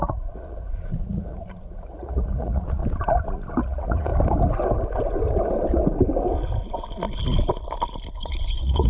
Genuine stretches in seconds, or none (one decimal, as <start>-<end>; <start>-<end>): 2.8-3.6; 4.1-8.2